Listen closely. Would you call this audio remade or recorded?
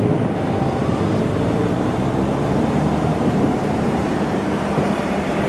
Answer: remade